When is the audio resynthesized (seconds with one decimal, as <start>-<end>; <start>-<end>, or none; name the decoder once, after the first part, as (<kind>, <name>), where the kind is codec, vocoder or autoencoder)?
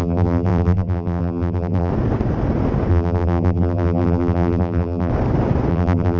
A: 0.0-1.9 (vocoder, BigVGAN v2); 2.9-5.1; 5.7-6.2